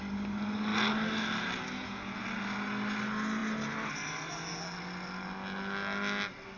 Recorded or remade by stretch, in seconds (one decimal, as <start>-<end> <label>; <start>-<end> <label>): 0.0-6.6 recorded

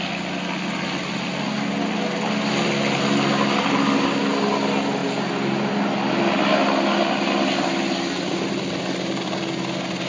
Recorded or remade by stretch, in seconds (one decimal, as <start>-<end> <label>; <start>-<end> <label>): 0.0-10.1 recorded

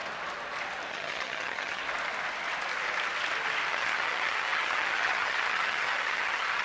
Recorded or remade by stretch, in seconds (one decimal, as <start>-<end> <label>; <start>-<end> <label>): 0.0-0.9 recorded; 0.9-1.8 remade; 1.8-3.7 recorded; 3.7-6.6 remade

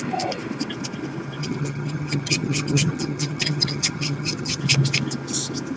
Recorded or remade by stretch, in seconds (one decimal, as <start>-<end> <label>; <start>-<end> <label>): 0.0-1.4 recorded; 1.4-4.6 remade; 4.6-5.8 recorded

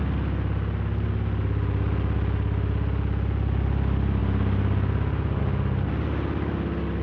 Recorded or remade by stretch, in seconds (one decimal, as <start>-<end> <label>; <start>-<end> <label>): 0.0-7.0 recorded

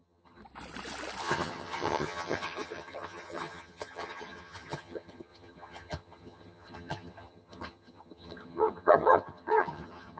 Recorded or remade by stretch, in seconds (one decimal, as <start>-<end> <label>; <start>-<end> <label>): 0.0-0.4 remade; 0.4-1.2 recorded; 1.2-10.2 remade

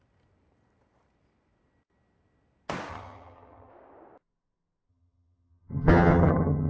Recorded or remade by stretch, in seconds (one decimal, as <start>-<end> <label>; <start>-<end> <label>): 0.0-2.9 recorded; 2.9-3.7 remade; 3.7-4.9 recorded; 4.9-6.7 remade

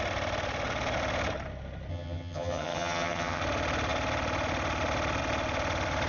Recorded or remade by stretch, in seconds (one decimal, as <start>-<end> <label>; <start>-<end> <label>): 0.0-1.9 recorded; 1.9-3.4 remade; 3.4-6.1 recorded